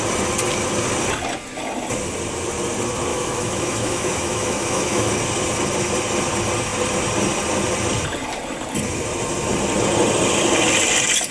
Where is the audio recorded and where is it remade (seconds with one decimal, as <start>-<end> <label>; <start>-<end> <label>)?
0.0-3.1 recorded; 3.1-5.1 remade; 5.1-11.3 recorded